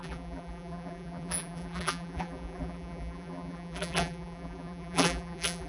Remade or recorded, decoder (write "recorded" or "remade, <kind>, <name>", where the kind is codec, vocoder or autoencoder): remade, vocoder, BigVGAN v2